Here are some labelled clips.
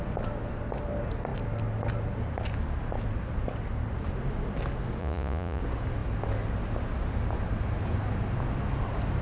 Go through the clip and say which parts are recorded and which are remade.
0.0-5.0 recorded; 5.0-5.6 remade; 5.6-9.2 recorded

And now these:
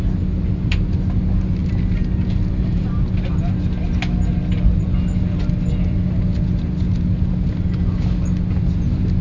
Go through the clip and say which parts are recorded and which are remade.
0.0-9.2 recorded

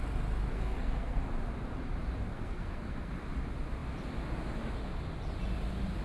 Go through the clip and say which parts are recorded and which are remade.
0.0-0.5 recorded; 0.5-1.2 remade; 1.2-2.3 recorded; 2.3-3.1 remade; 3.1-6.0 recorded